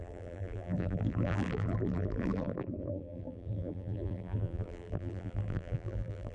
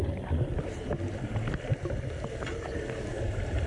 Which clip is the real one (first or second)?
second